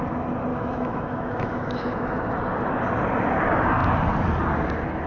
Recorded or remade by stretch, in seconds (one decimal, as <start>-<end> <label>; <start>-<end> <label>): 0.0-0.5 recorded; 0.5-2.2 remade; 2.2-5.1 recorded